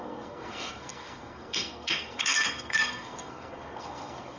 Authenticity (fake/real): fake